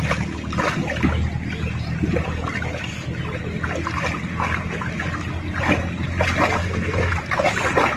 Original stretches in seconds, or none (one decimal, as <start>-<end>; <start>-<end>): 0.0-6.6; 7.1-8.0